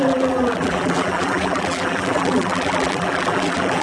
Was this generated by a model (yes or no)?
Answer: yes